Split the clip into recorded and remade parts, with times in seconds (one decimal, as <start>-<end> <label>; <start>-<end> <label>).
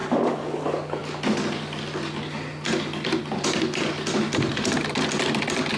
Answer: 0.0-0.6 remade; 0.6-5.8 recorded